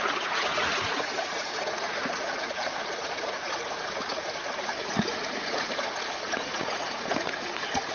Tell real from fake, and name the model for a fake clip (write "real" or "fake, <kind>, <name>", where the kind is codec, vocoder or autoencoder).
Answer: fake, vocoder, Vocos